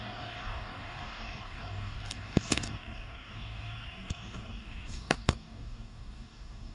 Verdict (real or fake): fake